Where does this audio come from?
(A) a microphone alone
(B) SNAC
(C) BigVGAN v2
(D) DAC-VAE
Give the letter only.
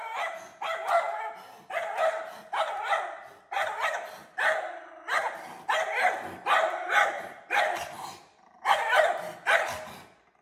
A